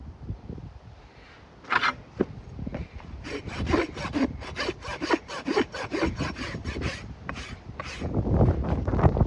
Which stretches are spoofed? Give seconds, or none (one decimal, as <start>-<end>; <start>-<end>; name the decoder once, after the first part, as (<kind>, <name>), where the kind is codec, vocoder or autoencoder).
none